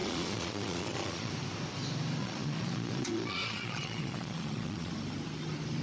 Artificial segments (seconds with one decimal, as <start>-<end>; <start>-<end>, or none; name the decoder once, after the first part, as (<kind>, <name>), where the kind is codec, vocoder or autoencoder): 0.0-1.3 (vocoder, Vocos); 2.2-4.9